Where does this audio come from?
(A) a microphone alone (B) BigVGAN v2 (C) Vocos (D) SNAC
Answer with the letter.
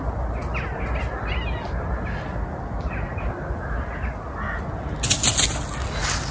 A